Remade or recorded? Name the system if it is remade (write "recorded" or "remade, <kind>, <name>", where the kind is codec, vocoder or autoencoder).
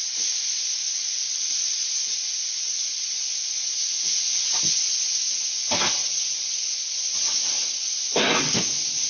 recorded